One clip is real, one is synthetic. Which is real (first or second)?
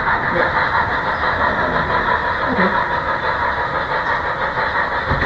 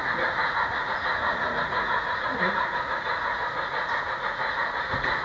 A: first